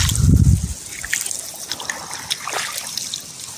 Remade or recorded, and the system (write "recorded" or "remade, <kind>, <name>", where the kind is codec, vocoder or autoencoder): recorded